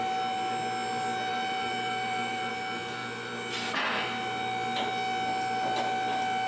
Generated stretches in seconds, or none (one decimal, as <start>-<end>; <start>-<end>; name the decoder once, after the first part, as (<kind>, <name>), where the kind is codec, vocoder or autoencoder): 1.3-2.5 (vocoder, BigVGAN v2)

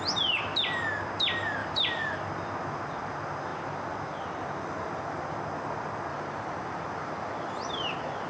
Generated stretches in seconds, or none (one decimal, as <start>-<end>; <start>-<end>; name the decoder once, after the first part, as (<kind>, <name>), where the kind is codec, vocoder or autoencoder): 1.6-2.2 (vocoder, BigVGAN v2); 6.1-8.3

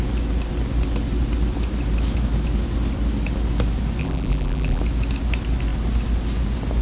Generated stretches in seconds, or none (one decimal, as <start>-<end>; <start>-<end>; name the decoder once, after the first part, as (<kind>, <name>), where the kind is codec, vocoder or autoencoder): 4.0-4.8 (vocoder, BigVGAN v2)